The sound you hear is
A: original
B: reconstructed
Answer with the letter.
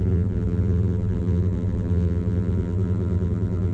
B